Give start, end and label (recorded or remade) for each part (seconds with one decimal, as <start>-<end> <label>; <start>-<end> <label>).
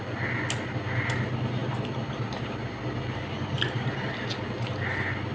0.0-5.3 recorded